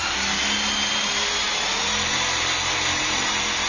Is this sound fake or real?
real